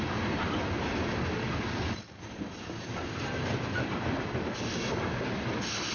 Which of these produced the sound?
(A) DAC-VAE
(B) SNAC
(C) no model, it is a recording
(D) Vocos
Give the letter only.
C